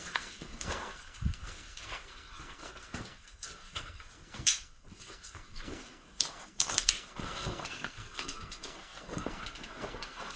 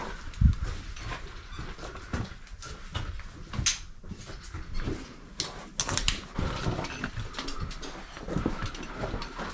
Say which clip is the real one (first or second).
second